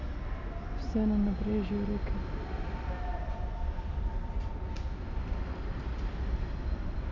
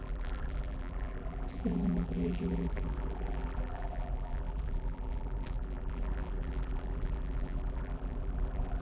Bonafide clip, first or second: first